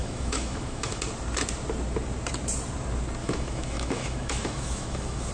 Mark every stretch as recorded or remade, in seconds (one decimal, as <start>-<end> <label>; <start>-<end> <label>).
0.0-1.0 remade; 1.0-3.2 recorded; 3.2-5.3 remade